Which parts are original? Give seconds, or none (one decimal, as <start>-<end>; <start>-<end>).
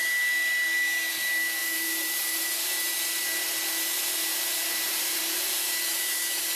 0.0-1.6; 2.9-4.3